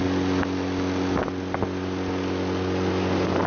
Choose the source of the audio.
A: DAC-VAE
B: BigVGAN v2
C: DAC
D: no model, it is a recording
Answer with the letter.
D